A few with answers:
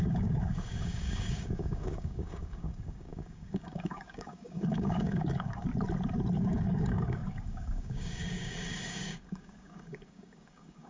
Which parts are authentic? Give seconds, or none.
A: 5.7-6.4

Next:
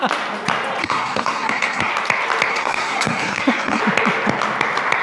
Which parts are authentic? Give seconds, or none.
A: 0.0-0.8; 1.9-2.5; 3.8-5.0

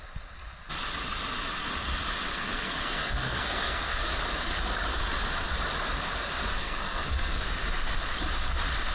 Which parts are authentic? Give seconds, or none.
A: 0.0-2.3; 4.1-6.6; 7.4-8.9

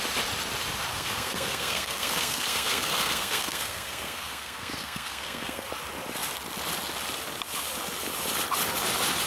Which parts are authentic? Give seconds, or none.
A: 0.0-0.9; 5.7-9.3

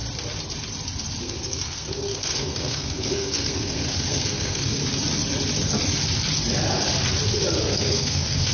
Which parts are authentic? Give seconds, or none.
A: 0.0-1.2; 4.8-7.6

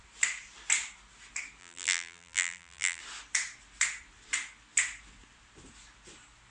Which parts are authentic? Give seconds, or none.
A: 0.0-1.6; 3.0-6.5

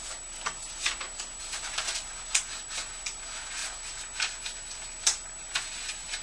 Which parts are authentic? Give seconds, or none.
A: 0.0-6.2

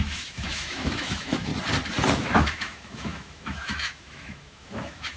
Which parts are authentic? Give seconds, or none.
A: 1.5-2.1